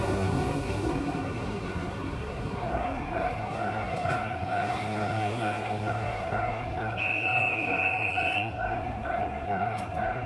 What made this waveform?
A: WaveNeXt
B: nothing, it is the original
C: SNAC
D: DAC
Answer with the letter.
C